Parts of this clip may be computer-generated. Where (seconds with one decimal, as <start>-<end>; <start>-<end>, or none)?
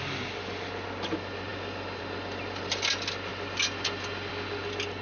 none